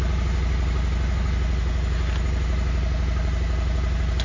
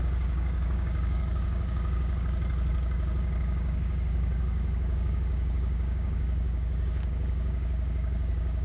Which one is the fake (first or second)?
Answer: second